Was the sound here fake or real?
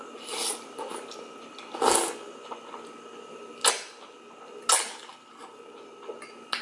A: real